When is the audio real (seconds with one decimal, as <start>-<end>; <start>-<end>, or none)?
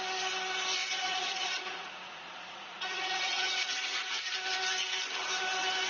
0.0-0.8; 4.3-5.9